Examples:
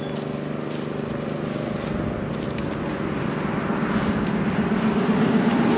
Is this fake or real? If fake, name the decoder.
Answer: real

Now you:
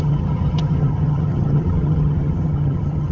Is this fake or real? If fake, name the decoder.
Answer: fake, vocoder, HiFi-GAN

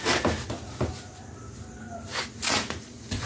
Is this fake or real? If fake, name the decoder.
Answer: real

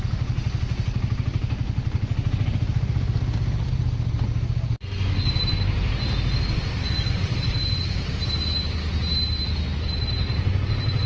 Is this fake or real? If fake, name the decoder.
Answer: real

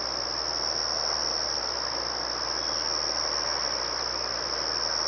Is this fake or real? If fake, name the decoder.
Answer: real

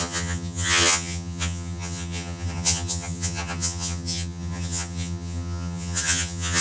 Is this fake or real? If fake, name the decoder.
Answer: fake, vocoder, HiFi-GAN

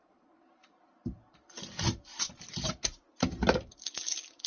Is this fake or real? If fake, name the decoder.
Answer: real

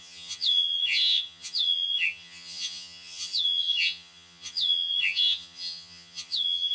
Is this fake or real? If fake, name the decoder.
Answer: fake, vocoder, HiFi-GAN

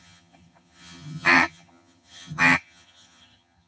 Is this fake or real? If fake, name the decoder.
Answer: fake, vocoder, HiFi-GAN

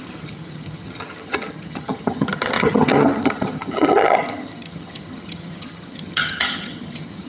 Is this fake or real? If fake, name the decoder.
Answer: fake, vocoder, HiFi-GAN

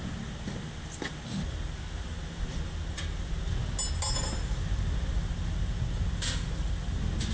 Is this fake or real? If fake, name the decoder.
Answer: real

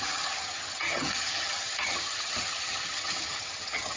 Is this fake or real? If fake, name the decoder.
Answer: fake, vocoder, HiFi-GAN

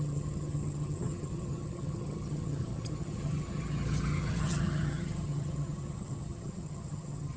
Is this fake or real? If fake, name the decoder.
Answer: fake, vocoder, HiFi-GAN